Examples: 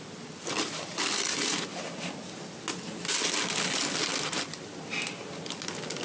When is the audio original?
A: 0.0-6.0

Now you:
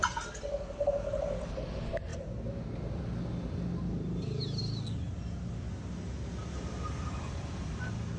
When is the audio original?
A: 0.0-8.2

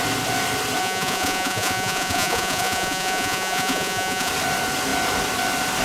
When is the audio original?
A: 0.0-0.8; 4.3-5.8

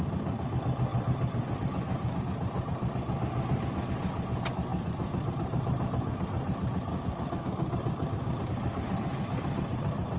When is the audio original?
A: 0.0-6.9; 8.5-10.2

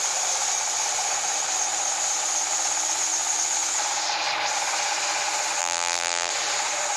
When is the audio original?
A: 0.0-5.6; 6.3-7.0

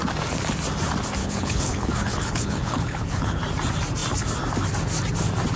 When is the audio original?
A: 0.0-1.2; 3.4-5.6

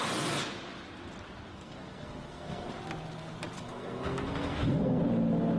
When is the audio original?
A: 0.0-1.5; 2.7-3.6; 5.0-5.6

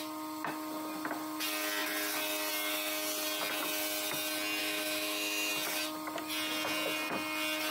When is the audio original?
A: 0.0-4.6; 5.5-7.7